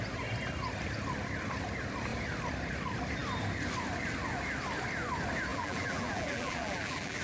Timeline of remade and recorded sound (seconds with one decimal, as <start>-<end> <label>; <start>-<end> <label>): 0.0-5.5 recorded; 5.5-7.2 remade

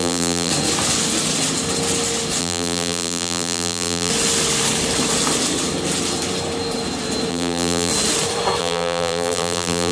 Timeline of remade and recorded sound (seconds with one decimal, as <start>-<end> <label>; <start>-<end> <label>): 0.0-0.5 remade; 0.5-2.4 recorded; 2.4-4.1 remade; 4.1-7.3 recorded; 7.3-7.9 remade; 7.9-8.6 recorded; 8.6-9.9 remade

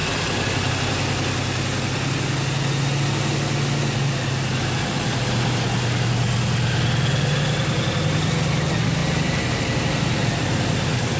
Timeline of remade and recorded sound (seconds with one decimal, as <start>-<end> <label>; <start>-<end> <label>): 0.0-0.7 remade; 0.7-9.0 recorded; 9.0-10.6 remade; 10.6-11.2 recorded